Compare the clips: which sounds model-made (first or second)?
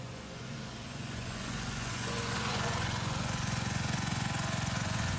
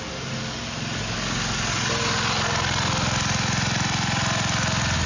first